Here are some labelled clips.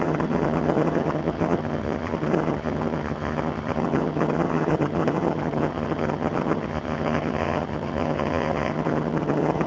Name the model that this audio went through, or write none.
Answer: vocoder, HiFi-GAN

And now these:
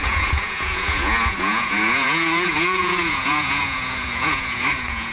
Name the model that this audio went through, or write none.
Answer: vocoder, Vocos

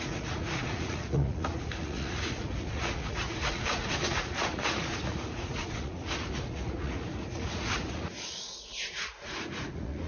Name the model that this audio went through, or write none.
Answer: vocoder, Vocos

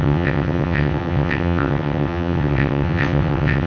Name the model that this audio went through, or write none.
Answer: vocoder, WaveNeXt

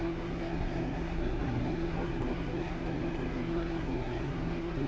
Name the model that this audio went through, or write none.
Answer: codec, SNAC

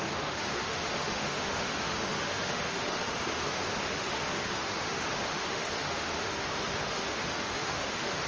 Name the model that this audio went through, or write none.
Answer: autoencoder, DAC-VAE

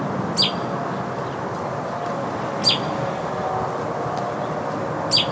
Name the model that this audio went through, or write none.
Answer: none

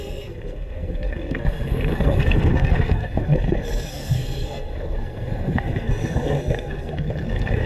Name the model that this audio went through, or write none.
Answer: codec, SNAC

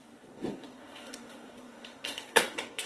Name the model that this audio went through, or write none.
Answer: codec, SNAC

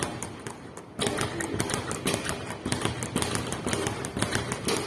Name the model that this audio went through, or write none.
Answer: none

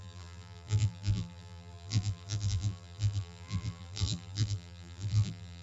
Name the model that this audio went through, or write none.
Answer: vocoder, BigVGAN v2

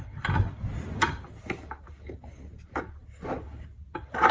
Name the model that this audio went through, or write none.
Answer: none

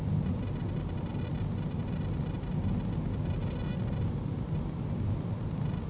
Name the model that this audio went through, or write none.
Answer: none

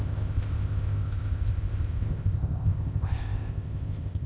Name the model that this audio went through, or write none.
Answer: codec, ZipCodec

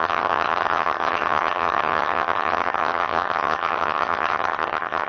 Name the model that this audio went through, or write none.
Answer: vocoder, HiFi-GAN